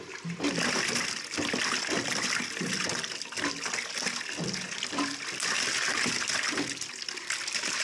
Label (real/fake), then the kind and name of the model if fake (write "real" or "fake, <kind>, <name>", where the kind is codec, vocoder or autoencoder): real